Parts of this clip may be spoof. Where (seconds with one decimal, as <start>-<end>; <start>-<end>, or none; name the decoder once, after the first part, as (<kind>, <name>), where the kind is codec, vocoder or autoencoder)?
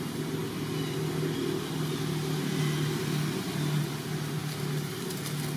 none